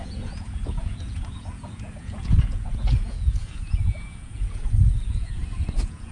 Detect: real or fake fake